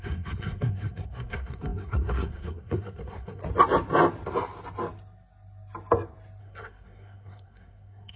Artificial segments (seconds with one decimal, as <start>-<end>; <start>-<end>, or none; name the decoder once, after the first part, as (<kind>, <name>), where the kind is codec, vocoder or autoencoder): 0.0-3.4 (codec, SNAC); 6.4-8.2

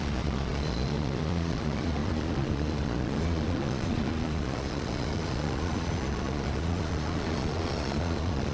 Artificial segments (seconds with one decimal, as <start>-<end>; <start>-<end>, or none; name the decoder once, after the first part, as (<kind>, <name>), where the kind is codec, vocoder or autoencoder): 0.0-8.5 (vocoder, Vocos)

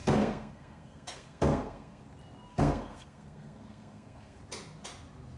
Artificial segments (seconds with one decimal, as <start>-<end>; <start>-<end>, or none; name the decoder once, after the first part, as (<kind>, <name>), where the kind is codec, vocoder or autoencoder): 0.0-2.0 (codec, SNAC); 2.5-4.4

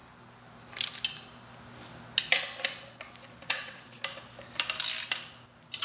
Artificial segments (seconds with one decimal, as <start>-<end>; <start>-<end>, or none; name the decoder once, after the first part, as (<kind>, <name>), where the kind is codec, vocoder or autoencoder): 3.5-4.0 (vocoder, WaveNeXt)

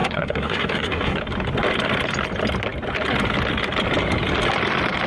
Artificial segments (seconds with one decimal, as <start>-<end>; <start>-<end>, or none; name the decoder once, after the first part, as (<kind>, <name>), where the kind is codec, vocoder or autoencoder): 0.0-1.2 (codec, SNAC)

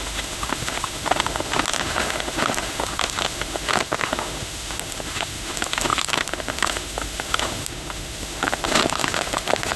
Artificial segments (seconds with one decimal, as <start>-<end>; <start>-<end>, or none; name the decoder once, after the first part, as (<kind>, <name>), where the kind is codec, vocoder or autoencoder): 0.0-9.8 (autoencoder, DAC-VAE)